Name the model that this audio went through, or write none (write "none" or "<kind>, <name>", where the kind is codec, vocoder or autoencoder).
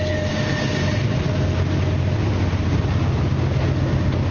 none